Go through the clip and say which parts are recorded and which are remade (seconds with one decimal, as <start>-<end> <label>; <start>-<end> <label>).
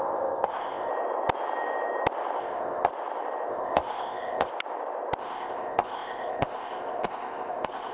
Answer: 0.0-0.9 remade; 0.9-2.4 recorded; 2.4-2.9 remade; 2.9-3.5 recorded; 3.5-4.5 remade; 4.5-5.2 recorded; 5.2-7.9 remade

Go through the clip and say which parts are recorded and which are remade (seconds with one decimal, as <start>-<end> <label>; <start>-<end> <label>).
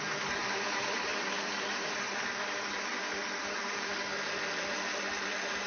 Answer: 0.0-5.7 recorded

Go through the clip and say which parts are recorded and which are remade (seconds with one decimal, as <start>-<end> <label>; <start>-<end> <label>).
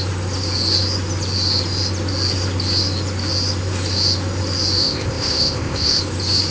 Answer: 0.0-4.8 recorded; 4.8-6.0 remade; 6.0-6.5 recorded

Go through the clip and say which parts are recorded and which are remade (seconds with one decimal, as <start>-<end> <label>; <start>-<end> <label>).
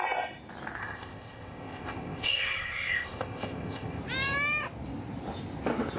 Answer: 0.0-0.8 recorded; 0.8-4.0 remade; 4.0-6.0 recorded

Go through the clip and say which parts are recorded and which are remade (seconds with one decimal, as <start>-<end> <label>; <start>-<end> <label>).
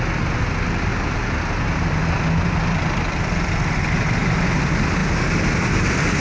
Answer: 0.0-6.2 recorded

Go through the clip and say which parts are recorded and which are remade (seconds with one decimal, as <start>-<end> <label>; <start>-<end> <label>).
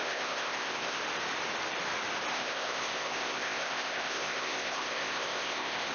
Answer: 0.0-1.0 remade; 1.0-2.3 recorded; 2.3-5.9 remade